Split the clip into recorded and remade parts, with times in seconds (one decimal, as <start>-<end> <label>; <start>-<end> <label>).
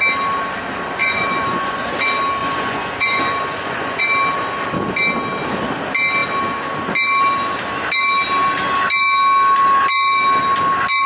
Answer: 0.0-1.0 recorded; 1.0-1.9 remade; 1.9-2.4 recorded; 2.4-4.0 remade; 4.0-11.1 recorded